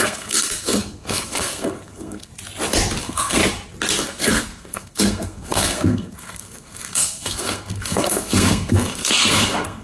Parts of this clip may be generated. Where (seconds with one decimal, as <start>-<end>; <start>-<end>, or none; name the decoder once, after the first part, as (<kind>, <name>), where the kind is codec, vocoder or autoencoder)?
0.0-2.3 (codec, SNAC); 3.0-3.4; 4.0-9.8